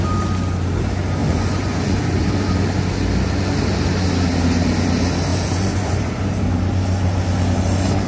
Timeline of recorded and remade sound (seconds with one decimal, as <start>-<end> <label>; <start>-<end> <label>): 0.0-1.2 recorded; 1.2-2.3 remade; 2.3-5.3 recorded; 5.3-6.2 remade; 6.2-8.1 recorded